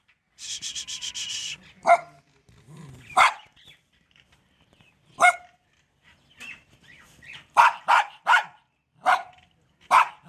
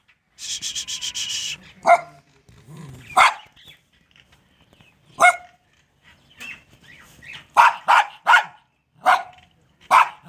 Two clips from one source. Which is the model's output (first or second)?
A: first